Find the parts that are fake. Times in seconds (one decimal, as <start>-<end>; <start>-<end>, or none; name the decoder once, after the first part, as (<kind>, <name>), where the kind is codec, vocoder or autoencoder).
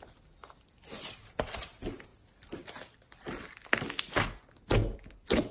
0.4-1.3 (vocoder, BigVGAN v2); 2.1-3.2